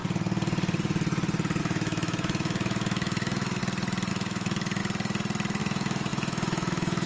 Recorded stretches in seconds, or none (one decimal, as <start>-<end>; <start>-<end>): 0.0-1.6; 3.6-4.1; 4.8-5.6